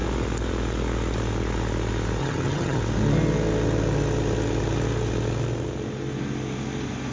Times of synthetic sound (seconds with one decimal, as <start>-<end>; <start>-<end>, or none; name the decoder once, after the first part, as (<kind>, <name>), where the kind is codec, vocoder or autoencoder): 2.2-2.8 (vocoder, HiFi-GAN)